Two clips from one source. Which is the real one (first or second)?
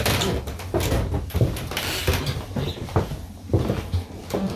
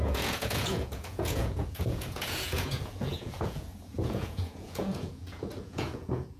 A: first